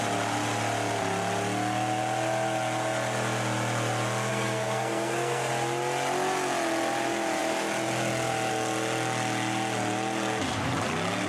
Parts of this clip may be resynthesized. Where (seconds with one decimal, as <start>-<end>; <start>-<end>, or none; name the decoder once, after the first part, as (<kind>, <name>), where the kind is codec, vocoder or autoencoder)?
4.3-5.5 (codec, SNAC)